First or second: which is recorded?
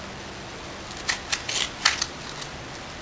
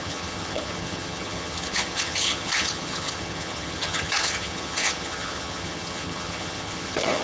first